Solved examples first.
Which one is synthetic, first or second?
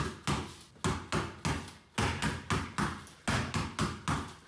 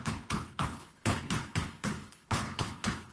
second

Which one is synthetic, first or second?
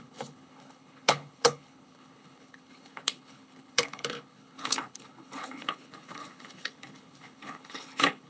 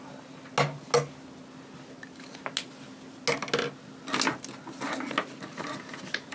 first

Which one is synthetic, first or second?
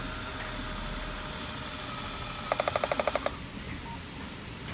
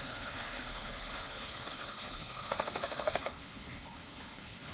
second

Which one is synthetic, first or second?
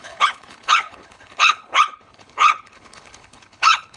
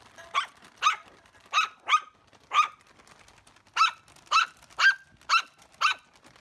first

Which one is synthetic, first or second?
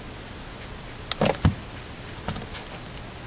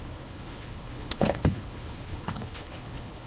second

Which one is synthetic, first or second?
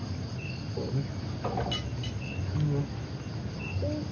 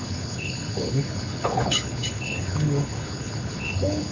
second